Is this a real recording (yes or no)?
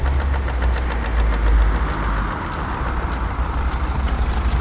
yes